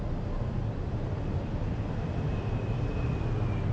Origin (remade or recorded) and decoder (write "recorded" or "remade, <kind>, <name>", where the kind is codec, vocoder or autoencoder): recorded